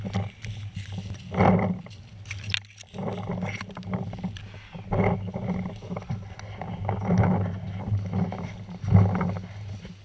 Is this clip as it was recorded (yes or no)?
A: yes